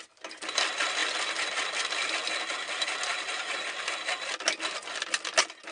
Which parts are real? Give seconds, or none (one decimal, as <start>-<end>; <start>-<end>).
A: 0.0-5.7